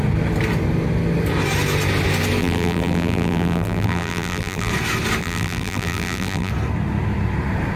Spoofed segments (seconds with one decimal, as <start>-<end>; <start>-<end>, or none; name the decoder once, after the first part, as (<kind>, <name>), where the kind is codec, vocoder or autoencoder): 2.4-4.7 (vocoder, BigVGAN v2); 5.2-6.5